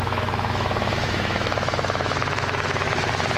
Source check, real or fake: fake